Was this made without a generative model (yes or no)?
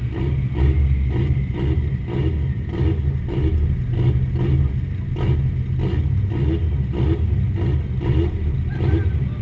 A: yes